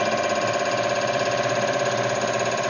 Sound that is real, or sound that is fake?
real